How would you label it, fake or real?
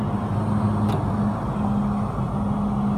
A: real